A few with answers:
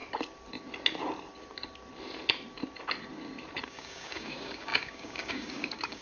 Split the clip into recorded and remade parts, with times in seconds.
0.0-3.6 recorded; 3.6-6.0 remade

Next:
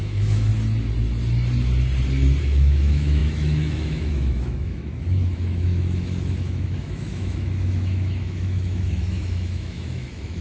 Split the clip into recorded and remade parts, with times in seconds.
0.0-0.5 remade; 0.5-2.4 recorded; 2.4-10.4 remade

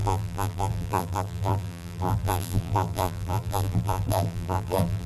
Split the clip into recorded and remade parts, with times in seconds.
0.0-5.1 remade

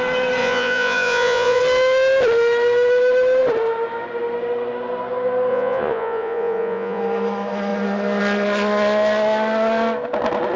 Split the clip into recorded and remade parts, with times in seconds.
0.0-0.4 recorded; 0.4-1.6 remade; 1.6-5.5 recorded; 5.5-7.0 remade; 7.0-10.6 recorded

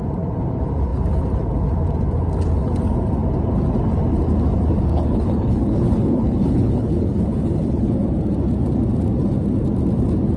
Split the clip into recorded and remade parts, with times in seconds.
0.0-4.9 recorded; 4.9-7.9 remade; 7.9-10.4 recorded

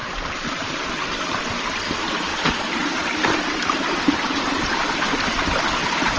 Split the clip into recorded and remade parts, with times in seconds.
0.0-2.3 recorded; 2.3-6.2 remade